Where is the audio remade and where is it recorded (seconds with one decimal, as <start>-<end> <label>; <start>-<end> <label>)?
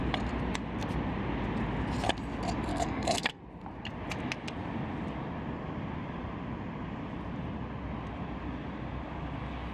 0.0-2.7 recorded; 2.7-3.4 remade; 3.4-9.7 recorded